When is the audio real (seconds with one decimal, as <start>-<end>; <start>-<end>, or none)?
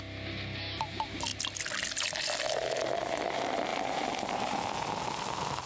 0.0-3.7; 4.6-5.7